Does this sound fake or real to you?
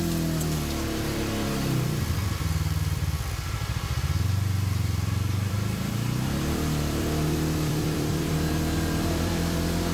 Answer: fake